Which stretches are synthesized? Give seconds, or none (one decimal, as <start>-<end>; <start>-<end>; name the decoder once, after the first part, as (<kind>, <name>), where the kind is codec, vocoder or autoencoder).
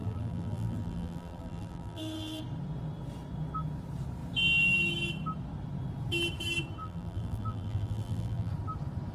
0.0-2.4 (vocoder, BigVGAN v2); 6.8-8.5